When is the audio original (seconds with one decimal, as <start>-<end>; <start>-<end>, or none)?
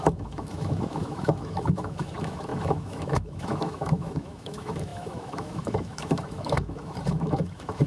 none